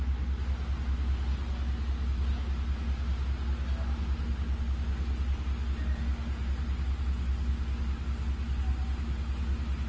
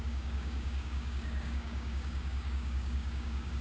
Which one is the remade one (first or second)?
second